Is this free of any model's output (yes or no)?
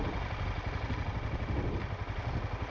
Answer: yes